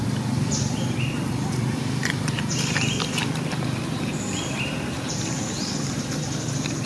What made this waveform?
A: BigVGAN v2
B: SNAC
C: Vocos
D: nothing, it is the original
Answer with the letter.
A